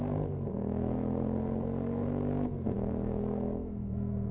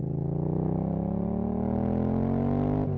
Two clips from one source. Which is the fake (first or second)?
first